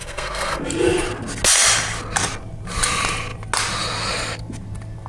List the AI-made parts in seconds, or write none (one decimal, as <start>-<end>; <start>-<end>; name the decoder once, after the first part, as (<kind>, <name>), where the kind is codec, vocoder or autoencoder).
0.0-0.6 (codec, SNAC)